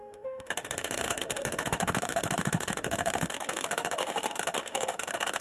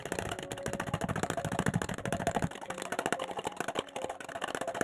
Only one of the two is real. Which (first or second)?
second